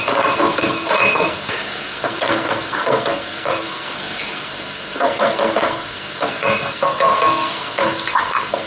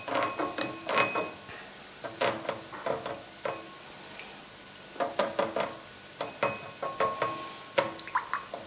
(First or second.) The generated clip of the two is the first